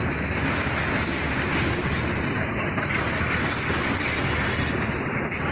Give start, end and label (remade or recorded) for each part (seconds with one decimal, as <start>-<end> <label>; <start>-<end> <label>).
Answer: 0.0-1.8 recorded; 1.8-2.7 remade; 2.7-5.5 recorded